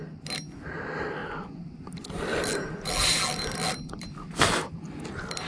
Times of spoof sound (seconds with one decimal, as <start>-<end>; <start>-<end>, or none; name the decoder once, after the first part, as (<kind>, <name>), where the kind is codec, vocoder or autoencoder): none